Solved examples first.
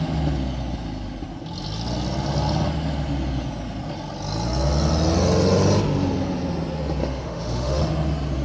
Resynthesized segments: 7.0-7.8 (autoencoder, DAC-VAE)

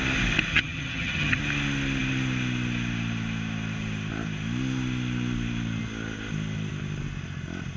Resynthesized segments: 0.5-1.4 (vocoder, HiFi-GAN)

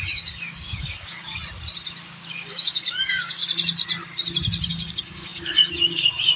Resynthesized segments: 0.0-1.4 (codec, DAC); 2.3-3.4; 4.7-6.4

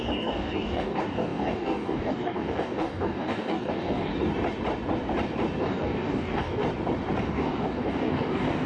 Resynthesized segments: 0.0-4.1 (codec, DAC); 5.6-6.6; 7.2-8.7

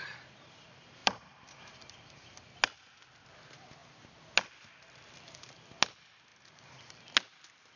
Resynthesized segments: 1.0-2.4 (vocoder, BigVGAN v2); 6.3-7.0

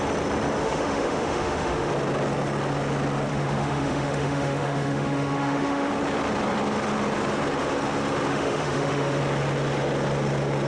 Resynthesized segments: 0.6-1.9 (autoencoder, DAC-VAE); 3.3-5.9; 8.3-9.2

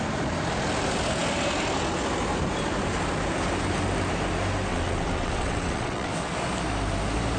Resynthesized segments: 4.7-6.1 (vocoder, WaveNeXt)